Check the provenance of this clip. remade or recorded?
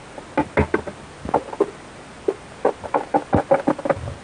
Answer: recorded